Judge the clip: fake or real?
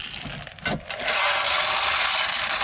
real